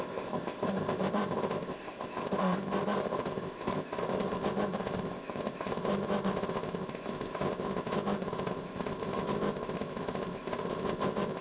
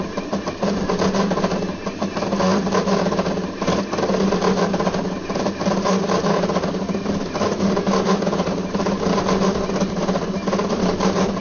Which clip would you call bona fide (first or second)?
second